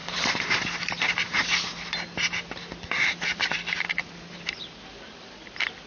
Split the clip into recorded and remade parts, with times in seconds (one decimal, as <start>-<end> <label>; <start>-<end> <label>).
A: 0.0-5.9 recorded